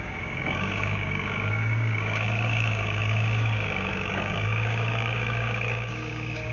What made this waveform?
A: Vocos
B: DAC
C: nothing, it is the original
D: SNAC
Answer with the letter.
B